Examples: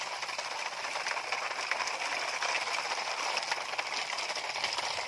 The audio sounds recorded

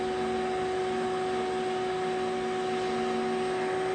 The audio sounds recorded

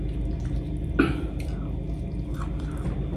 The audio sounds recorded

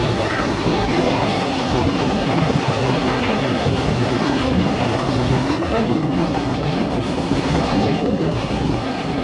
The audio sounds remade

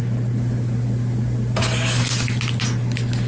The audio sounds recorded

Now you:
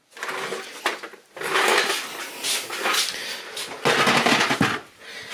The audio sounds recorded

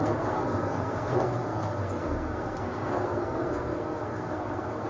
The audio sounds remade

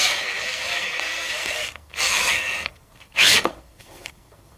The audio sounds remade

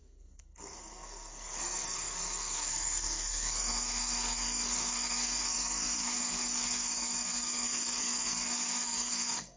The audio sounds remade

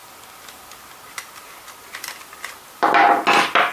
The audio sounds recorded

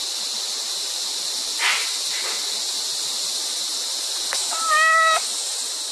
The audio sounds recorded